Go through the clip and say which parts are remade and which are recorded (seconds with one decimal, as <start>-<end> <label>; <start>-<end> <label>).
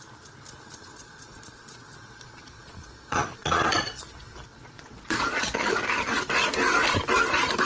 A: 0.0-0.9 recorded; 0.9-4.1 remade; 4.1-4.5 recorded; 4.5-5.7 remade; 5.7-7.6 recorded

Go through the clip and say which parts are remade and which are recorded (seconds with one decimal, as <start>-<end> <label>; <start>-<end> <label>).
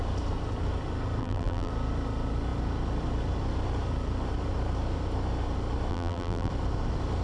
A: 0.0-1.2 recorded; 1.2-1.7 remade; 1.7-5.9 recorded; 5.9-6.5 remade; 6.5-7.2 recorded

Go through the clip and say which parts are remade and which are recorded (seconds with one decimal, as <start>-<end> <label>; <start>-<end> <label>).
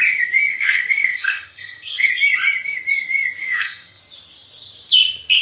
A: 0.0-0.5 recorded; 0.5-2.1 remade; 2.1-3.4 recorded; 3.4-4.0 remade; 4.0-5.4 recorded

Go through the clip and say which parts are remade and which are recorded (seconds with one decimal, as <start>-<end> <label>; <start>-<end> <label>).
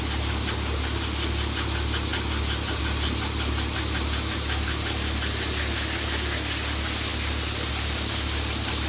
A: 0.0-8.9 recorded